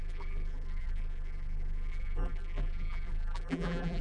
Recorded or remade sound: remade